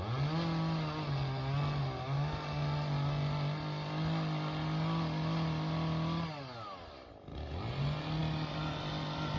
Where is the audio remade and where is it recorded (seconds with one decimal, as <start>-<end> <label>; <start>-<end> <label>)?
0.0-9.4 recorded